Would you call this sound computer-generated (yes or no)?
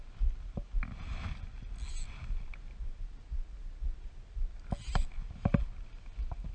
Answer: no